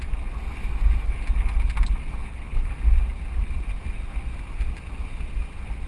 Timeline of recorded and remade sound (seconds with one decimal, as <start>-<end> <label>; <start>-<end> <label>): 0.0-2.2 recorded; 2.2-2.7 remade; 2.7-5.9 recorded